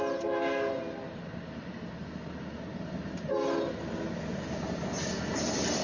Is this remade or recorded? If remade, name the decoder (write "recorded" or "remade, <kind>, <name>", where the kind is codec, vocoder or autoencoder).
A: recorded